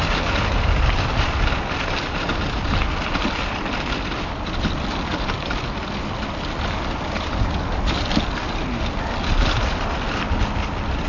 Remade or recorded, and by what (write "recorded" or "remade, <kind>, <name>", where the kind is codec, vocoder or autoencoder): recorded